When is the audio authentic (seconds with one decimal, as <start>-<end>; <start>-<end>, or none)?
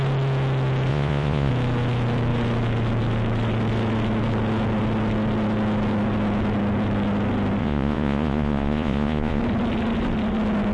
0.0-0.9; 1.5-7.6; 9.4-10.7